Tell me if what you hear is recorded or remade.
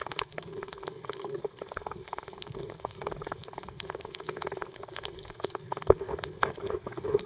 remade